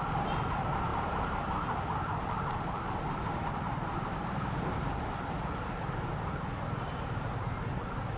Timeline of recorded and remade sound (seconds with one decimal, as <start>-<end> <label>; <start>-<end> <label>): 0.0-0.9 recorded; 0.9-1.4 remade; 1.4-4.2 recorded; 4.2-5.1 remade; 5.1-8.2 recorded